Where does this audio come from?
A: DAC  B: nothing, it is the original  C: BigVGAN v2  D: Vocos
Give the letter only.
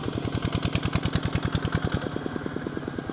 B